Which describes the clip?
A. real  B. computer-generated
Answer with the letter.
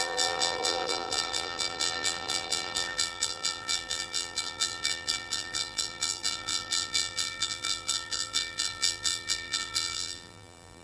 B